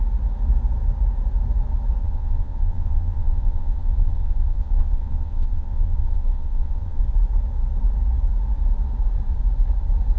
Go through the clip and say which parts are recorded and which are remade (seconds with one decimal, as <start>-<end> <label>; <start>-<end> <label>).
0.0-2.0 recorded; 2.0-7.0 remade; 7.0-10.2 recorded